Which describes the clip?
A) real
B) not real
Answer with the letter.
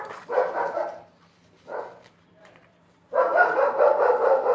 B